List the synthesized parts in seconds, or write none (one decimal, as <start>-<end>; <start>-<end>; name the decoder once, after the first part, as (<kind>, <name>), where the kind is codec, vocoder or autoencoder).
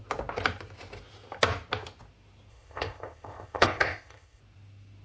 2.5-4.4 (codec, ZipCodec)